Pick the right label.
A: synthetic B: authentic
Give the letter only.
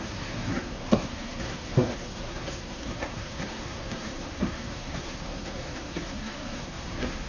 A